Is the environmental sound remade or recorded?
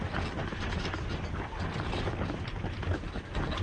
recorded